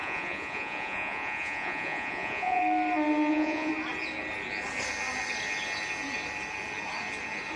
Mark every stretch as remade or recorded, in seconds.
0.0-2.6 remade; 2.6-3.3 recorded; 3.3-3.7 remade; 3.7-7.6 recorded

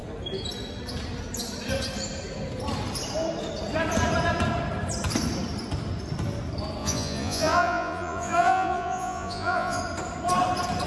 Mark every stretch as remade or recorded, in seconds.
0.0-6.8 recorded; 6.8-9.8 remade; 9.8-10.9 recorded

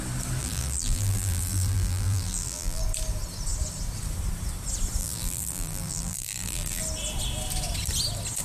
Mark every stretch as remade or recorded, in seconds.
0.0-0.4 recorded; 0.4-2.8 remade; 2.8-5.0 recorded; 5.0-6.8 remade; 6.8-8.4 recorded

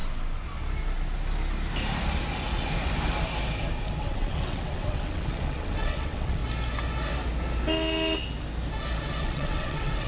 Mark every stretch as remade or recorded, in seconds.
0.0-4.0 recorded; 4.0-6.4 remade; 6.4-9.2 recorded; 9.2-10.1 remade

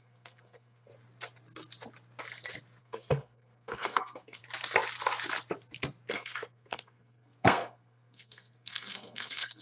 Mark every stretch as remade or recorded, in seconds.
0.0-0.9 remade; 0.9-2.8 recorded; 2.8-4.4 remade; 4.4-6.1 recorded; 6.1-9.6 remade

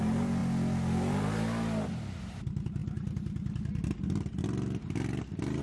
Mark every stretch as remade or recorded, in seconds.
0.0-5.6 recorded